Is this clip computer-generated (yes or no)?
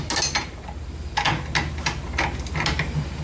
no